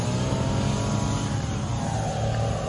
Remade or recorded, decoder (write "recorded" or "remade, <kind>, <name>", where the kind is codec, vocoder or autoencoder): recorded